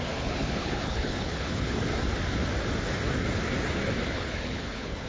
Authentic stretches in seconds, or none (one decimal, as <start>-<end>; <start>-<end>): 1.9-4.1